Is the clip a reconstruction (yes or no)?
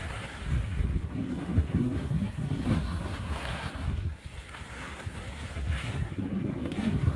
yes